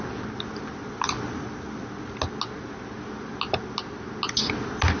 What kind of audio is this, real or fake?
real